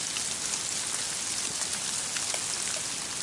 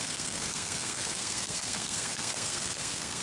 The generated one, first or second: second